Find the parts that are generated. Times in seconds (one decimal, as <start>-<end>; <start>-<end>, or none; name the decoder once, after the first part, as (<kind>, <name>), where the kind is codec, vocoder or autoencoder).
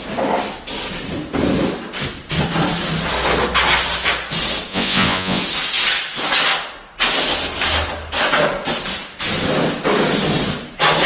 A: 4.7-5.4 (vocoder, Vocos)